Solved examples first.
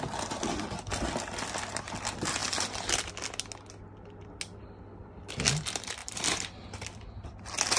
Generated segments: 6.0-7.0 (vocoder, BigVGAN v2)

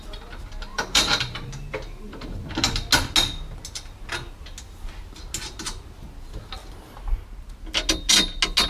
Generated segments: 0.7-2.5 (vocoder, BigVGAN v2)